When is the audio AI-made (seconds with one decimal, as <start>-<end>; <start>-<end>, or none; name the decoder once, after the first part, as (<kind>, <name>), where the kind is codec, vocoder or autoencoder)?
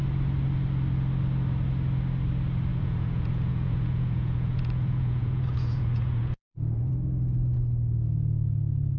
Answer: 2.7-6.9 (vocoder, Vocos)